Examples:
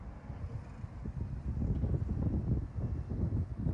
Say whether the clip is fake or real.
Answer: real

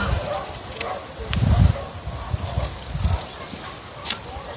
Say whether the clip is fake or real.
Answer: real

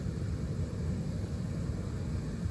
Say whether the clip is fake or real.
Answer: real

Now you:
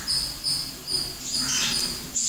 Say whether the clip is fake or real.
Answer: fake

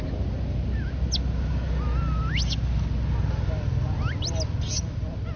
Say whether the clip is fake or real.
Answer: real